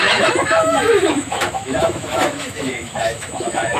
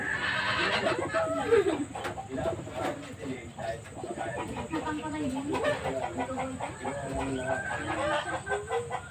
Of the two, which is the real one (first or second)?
second